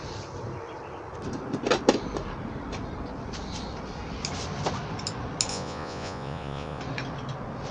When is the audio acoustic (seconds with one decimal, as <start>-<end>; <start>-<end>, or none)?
0.0-5.5; 6.8-7.7